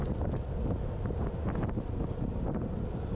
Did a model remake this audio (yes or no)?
no